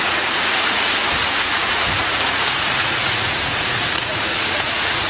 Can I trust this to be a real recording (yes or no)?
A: no